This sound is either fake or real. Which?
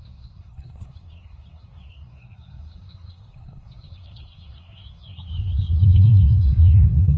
fake